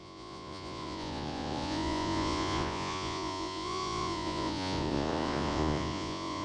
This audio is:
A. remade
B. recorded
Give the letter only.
A